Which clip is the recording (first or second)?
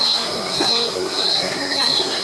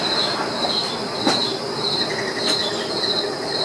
second